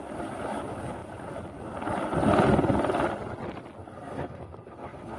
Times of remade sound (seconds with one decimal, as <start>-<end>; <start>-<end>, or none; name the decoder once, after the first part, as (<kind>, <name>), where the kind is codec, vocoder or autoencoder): 3.8-5.2 (codec, SNAC)